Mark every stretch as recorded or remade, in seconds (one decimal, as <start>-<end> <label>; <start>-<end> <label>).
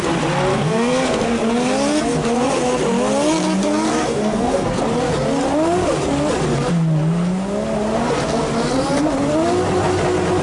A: 0.0-0.5 recorded; 0.5-1.4 remade; 1.4-4.0 recorded; 4.0-4.8 remade; 4.8-10.4 recorded